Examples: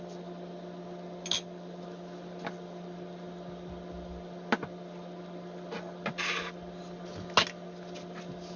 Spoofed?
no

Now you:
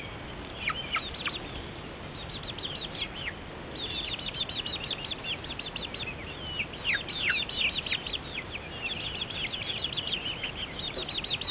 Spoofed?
no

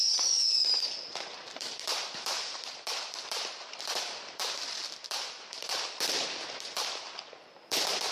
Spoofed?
yes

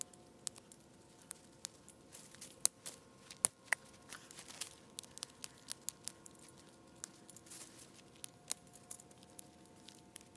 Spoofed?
no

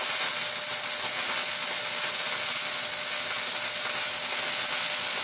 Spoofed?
no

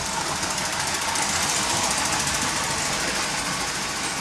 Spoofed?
no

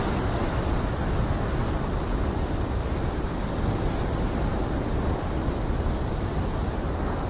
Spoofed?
no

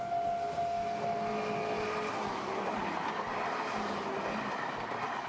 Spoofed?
no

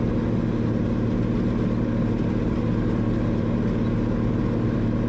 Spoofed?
no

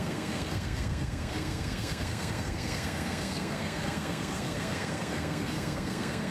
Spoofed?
yes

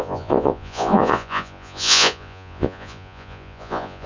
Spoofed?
yes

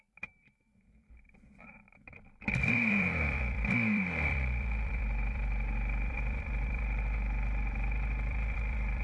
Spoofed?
yes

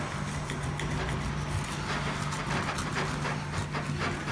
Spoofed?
no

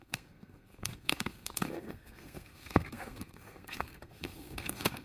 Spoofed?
yes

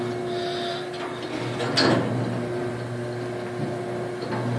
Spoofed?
no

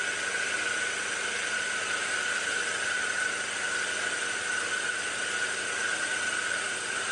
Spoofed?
no